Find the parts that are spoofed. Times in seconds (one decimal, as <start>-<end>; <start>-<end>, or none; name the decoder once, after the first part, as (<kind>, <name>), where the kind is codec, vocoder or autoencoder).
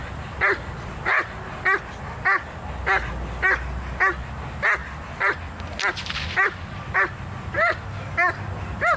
none